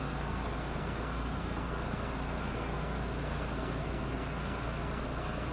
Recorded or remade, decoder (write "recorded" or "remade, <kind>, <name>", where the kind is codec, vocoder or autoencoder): remade, codec, SNAC